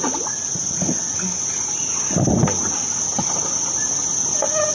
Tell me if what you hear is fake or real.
real